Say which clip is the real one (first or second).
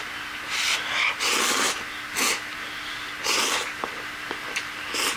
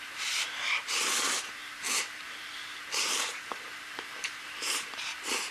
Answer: first